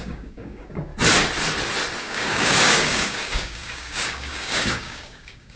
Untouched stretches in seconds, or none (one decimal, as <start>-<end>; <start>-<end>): 0.9-2.0